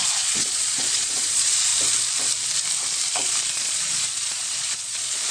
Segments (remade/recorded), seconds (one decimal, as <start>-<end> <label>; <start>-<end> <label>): 0.0-1.7 remade; 1.7-3.5 recorded; 3.5-5.3 remade